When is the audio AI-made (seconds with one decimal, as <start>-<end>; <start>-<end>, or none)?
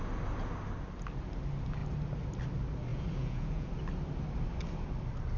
2.9-3.7